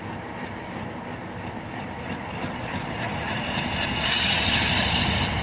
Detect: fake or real real